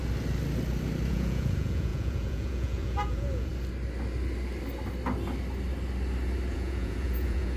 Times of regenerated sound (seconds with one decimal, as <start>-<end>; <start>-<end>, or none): 1.1-3.5; 6.5-7.6